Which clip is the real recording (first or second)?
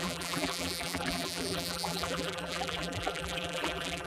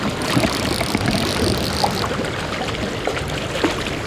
second